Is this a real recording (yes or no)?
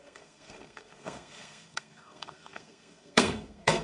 no